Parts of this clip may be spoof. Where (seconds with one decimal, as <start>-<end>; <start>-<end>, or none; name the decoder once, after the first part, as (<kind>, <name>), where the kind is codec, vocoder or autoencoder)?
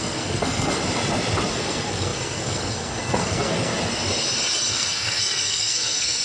0.0-0.8 (codec, SNAC); 1.5-3.7; 4.7-6.2